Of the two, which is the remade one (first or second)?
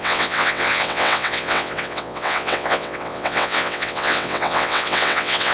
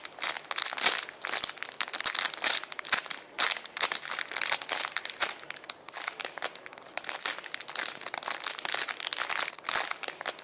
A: first